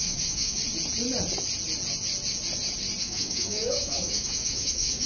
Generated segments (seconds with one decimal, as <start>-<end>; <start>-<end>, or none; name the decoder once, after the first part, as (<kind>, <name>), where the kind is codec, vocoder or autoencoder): 0.0-0.6 (autoencoder, DAC-VAE); 3.0-5.1